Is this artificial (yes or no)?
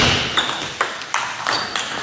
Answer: no